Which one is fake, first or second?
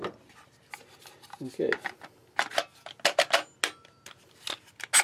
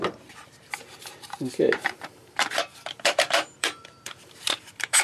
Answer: second